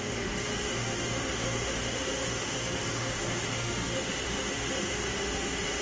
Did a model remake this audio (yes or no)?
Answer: yes